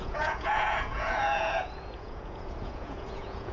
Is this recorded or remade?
remade